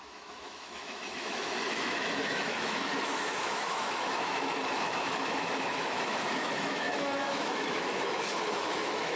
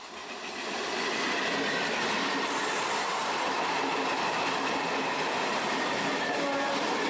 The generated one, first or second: first